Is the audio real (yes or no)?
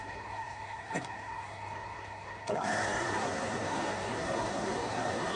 no